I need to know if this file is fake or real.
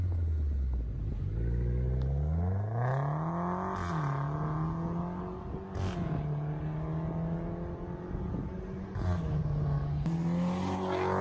real